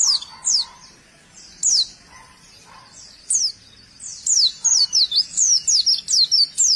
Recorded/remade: recorded